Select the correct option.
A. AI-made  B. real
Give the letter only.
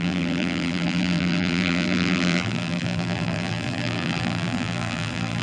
A